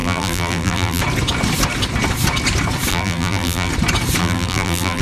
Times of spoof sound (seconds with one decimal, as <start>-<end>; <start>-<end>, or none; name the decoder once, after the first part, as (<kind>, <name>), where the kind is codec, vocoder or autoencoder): 0.0-1.0 (vocoder, BigVGAN v2); 2.9-3.7; 4.2-5.0